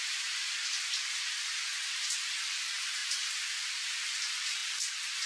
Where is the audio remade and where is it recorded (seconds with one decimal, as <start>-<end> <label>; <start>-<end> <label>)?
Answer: 0.0-5.3 remade